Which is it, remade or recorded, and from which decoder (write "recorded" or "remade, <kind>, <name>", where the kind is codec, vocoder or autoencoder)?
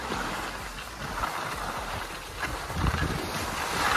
recorded